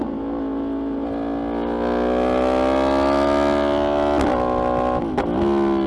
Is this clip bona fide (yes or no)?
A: yes